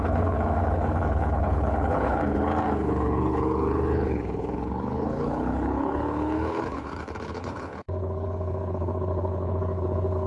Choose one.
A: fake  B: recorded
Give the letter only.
A